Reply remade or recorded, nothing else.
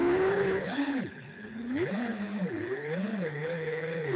remade